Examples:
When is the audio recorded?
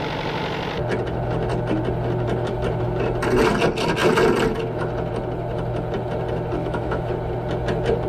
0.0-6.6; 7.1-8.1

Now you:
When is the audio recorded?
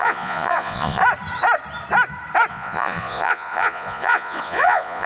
1.0-2.5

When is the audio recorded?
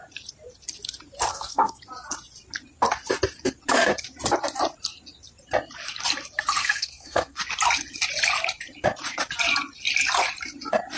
0.0-1.3; 1.8-6.6; 7.4-11.0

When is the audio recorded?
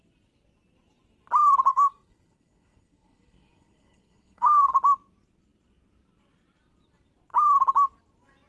0.0-1.7; 4.7-8.5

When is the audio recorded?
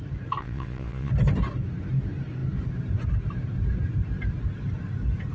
0.0-0.4; 1.1-5.3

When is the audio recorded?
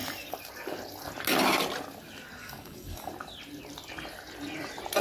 0.0-2.4; 3.1-5.0